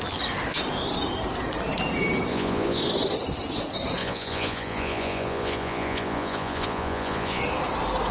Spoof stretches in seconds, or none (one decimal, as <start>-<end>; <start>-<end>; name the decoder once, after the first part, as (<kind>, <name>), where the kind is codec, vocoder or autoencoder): 2.3-2.8 (vocoder, Vocos); 4.0-7.4